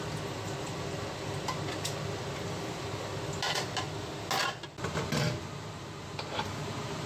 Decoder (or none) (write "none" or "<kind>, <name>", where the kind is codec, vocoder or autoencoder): none